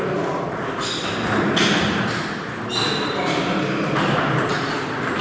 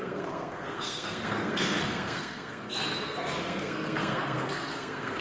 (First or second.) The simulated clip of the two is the second